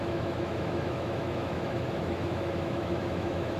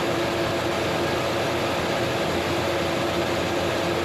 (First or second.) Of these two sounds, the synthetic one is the first